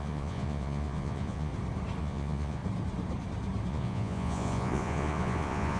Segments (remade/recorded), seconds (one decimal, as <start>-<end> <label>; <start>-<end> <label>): 0.0-1.5 remade; 1.5-2.0 recorded; 2.0-2.6 remade; 2.6-3.7 recorded; 3.7-5.8 remade